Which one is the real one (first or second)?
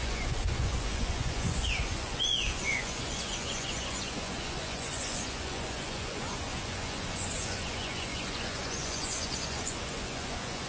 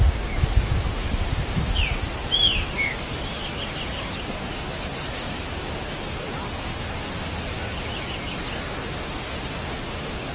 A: second